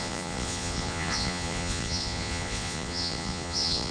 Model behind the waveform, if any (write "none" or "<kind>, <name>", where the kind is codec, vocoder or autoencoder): vocoder, Vocos